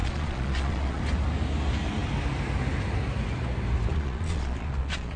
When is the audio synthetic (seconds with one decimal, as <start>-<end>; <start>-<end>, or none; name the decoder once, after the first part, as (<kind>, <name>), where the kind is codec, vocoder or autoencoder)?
0.0-1.0 (vocoder, Vocos); 3.9-5.2